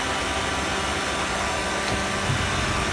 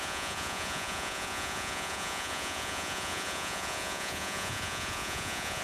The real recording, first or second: first